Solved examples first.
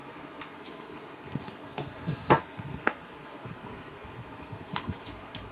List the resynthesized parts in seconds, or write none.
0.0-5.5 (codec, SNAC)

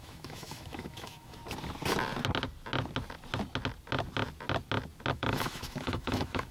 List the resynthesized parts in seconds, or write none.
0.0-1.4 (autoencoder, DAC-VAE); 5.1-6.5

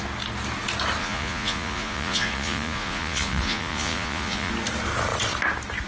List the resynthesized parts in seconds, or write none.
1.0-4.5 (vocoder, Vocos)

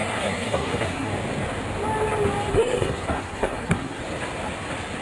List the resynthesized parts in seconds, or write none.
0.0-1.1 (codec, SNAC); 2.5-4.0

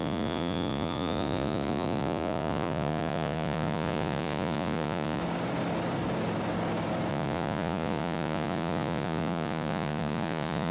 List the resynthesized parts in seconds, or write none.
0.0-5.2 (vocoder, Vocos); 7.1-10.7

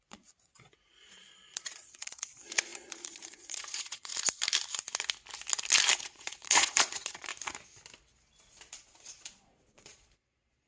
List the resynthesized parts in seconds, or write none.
0.0-4.1 (vocoder, Vocos); 6.0-7.3; 8.7-10.7